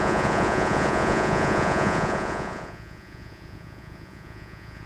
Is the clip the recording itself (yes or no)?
no